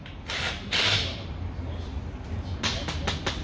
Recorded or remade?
recorded